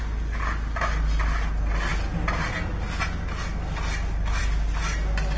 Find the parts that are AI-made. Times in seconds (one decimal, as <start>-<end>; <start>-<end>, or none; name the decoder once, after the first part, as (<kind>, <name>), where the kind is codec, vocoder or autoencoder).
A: none